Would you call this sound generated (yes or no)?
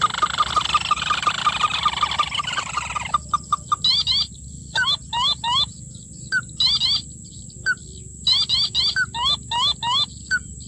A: no